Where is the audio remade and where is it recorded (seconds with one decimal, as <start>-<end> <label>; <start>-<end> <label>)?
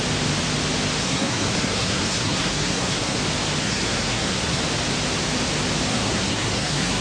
0.0-1.0 recorded; 1.0-3.2 remade; 3.2-3.6 recorded; 3.6-4.6 remade; 4.6-5.9 recorded; 5.9-7.0 remade